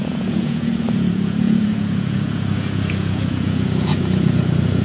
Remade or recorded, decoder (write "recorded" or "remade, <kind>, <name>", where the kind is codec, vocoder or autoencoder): remade, vocoder, Vocos